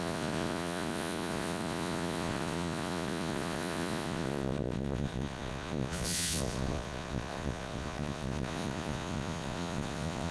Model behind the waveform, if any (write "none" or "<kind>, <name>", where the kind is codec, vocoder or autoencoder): vocoder, Vocos